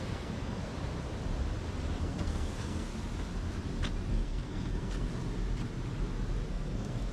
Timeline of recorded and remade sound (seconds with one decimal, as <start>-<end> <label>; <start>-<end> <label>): 0.0-0.7 remade; 0.7-1.9 recorded; 1.9-2.9 remade; 2.9-4.1 recorded; 4.1-5.1 remade; 5.1-6.5 recorded; 6.5-7.1 remade